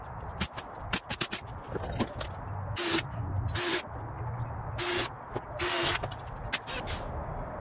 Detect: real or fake real